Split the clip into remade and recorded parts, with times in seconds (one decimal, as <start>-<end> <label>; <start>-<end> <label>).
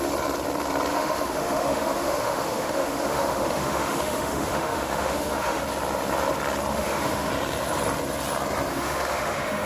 0.0-0.9 recorded; 0.9-5.6 remade; 5.6-6.7 recorded; 6.7-7.3 remade; 7.3-8.7 recorded; 8.7-9.7 remade